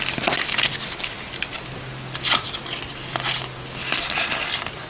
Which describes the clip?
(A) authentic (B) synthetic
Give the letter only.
A